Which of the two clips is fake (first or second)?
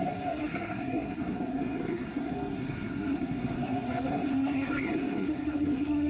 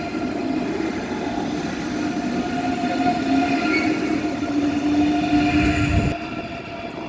first